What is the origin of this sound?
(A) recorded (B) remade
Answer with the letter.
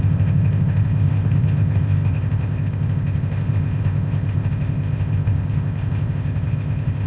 B